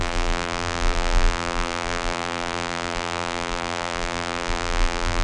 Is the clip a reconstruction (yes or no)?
yes